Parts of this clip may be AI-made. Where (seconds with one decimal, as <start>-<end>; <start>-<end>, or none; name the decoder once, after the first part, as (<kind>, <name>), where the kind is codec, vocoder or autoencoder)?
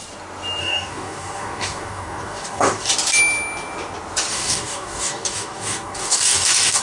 0.6-2.9 (codec, DAC); 4.3-6.8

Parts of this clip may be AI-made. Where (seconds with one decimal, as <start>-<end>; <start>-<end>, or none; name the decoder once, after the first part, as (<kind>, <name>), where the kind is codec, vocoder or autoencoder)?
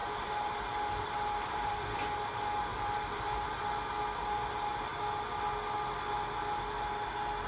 0.0-2.0 (vocoder, BigVGAN v2); 2.7-3.6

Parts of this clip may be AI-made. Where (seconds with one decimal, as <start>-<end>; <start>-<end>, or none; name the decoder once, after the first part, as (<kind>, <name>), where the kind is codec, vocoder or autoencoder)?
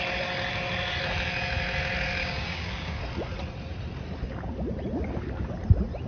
2.2-3.0 (codec, DAC)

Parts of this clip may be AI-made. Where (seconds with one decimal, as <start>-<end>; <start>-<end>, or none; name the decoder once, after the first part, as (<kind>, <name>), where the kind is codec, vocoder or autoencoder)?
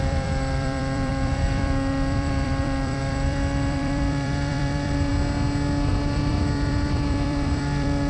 0.0-5.1 (vocoder, BigVGAN v2); 5.9-8.1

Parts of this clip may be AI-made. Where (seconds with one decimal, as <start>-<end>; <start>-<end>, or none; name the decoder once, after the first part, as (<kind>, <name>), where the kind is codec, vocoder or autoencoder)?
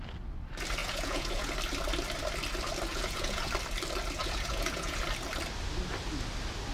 0.8-1.5 (vocoder, Vocos); 2.9-3.5; 4.2-5.0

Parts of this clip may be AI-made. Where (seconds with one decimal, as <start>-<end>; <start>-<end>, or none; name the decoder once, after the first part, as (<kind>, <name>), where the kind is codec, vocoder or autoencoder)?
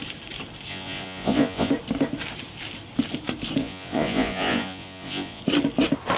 0.7-1.7 (vocoder, Vocos); 3.6-5.4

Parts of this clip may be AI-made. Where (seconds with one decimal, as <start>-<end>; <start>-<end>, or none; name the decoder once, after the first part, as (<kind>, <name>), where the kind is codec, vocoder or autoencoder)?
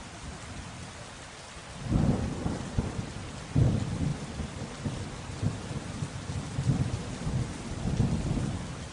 none